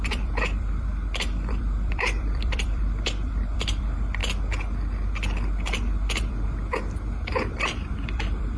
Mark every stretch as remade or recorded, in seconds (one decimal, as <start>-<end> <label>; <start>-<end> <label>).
0.0-0.9 remade; 0.9-1.5 recorded; 1.5-4.2 remade; 4.2-6.1 recorded; 6.1-8.6 remade